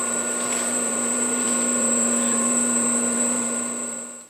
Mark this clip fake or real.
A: fake